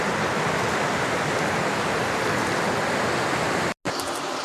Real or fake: real